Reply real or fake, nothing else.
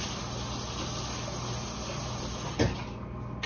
real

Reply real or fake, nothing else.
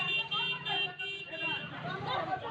fake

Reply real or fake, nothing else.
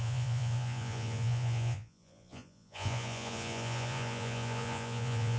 fake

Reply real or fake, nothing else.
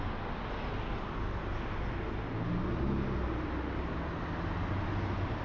real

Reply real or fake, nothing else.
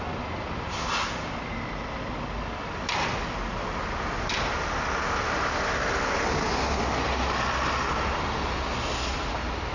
real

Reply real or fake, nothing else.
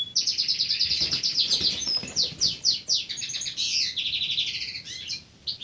real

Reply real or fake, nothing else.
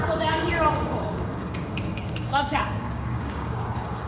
fake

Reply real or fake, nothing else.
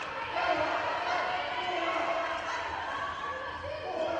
real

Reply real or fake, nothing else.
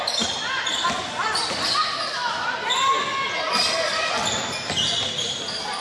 real